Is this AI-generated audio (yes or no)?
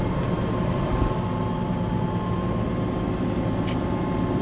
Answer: no